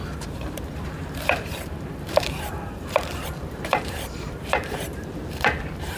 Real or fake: fake